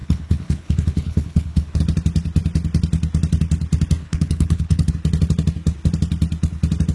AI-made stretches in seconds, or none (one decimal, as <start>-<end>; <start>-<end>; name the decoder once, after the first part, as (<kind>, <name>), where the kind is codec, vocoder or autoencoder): 0.0-1.8 (codec, HILCodec); 4.0-4.9